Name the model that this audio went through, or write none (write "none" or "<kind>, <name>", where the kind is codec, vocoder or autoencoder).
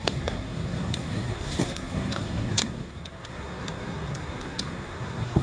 codec, SNAC